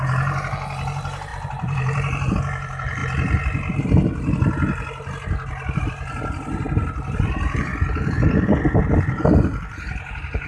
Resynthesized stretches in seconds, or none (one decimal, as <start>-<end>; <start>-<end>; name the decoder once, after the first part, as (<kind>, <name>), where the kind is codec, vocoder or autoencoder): 0.0-3.0 (vocoder, BigVGAN v2); 5.8-7.7; 8.8-10.5